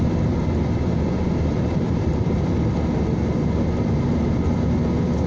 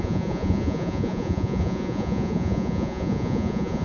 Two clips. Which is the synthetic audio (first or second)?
second